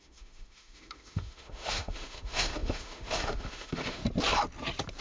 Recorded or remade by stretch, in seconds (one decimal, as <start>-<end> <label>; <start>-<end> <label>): 0.0-4.0 remade; 4.0-5.0 recorded